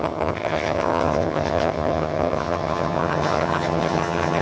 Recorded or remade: remade